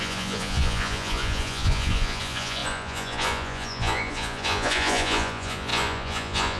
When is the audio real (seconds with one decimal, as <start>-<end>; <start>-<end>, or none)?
none